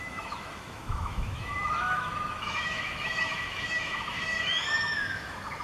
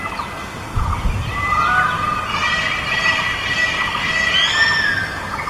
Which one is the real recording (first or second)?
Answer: second